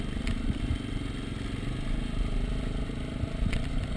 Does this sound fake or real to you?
real